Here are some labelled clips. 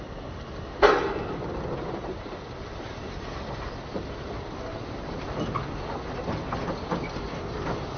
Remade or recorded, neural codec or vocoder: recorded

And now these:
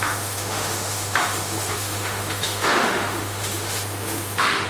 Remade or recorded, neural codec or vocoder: remade, autoencoder, DAC-VAE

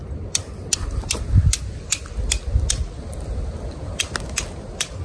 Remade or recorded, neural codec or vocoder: recorded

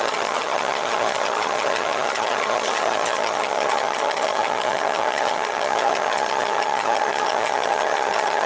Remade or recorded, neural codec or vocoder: remade, vocoder, HiFi-GAN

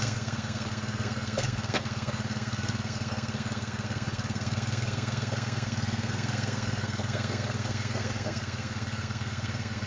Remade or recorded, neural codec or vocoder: remade, codec, SNAC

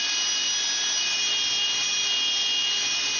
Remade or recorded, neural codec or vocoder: recorded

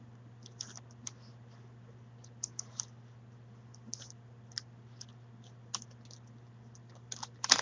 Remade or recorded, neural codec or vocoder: recorded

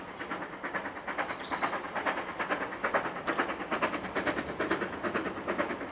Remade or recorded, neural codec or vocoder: recorded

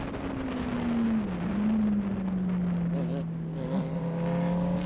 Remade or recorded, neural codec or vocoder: recorded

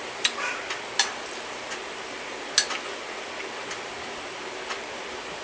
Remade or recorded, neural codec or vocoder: recorded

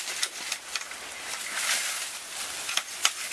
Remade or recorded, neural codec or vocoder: recorded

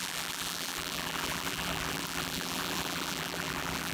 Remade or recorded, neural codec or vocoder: remade, vocoder, BigVGAN v2